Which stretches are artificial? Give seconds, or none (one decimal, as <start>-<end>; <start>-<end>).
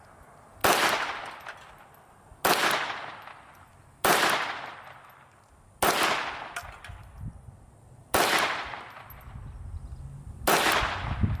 none